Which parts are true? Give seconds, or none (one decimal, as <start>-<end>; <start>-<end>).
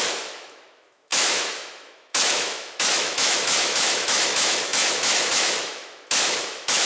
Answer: none